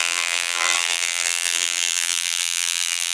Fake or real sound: fake